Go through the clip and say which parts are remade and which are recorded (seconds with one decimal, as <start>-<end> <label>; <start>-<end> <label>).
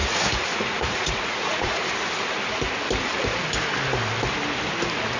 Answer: 0.0-1.8 remade; 1.8-5.2 recorded